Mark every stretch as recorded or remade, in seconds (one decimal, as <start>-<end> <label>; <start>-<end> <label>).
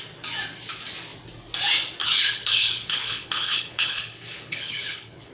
0.0-2.0 recorded; 2.0-5.3 remade